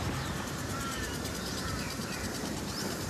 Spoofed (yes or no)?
yes